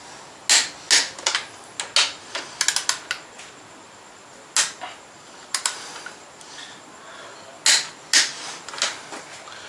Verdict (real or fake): real